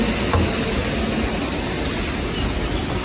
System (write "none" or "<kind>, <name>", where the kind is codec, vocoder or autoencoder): none